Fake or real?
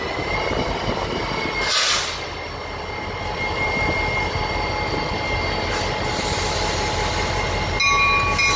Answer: real